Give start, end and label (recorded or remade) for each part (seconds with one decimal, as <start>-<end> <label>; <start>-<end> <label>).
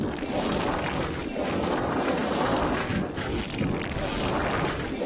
0.0-5.1 recorded